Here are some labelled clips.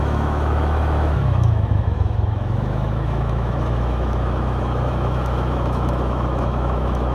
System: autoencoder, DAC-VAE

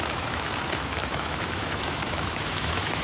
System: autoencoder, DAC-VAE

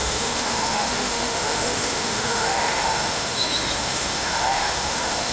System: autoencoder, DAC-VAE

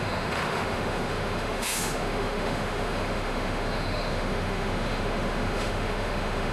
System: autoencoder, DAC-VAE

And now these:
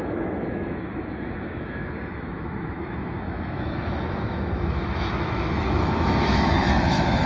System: autoencoder, DAC-VAE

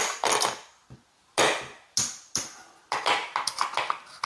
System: none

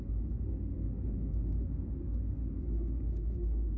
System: autoencoder, DAC-VAE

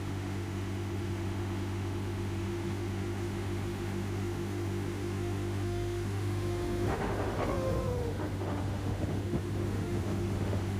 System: autoencoder, DAC-VAE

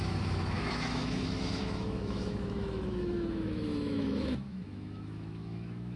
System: autoencoder, DAC-VAE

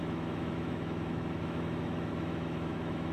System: autoencoder, DAC-VAE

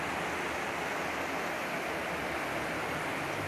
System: none